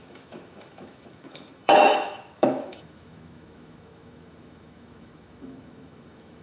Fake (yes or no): yes